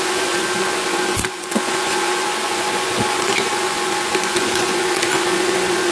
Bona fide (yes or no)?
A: no